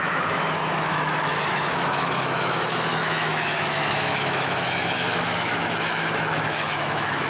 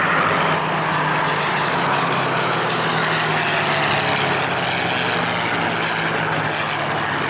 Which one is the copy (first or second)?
first